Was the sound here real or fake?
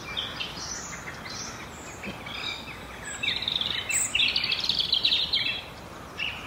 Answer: real